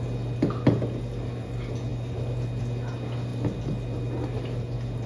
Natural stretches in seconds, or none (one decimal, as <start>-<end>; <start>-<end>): 0.0-5.1